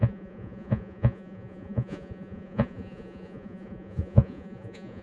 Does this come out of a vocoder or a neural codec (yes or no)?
yes